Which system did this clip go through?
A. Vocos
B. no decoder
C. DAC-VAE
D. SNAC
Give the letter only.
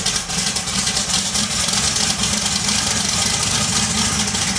B